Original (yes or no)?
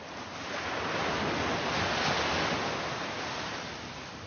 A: yes